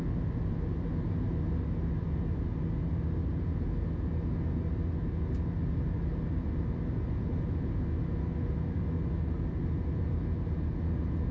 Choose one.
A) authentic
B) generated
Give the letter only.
A